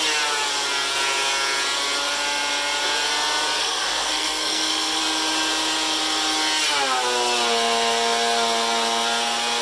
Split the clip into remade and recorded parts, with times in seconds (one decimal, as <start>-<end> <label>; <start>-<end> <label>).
0.0-3.6 recorded; 3.6-5.0 remade; 5.0-9.6 recorded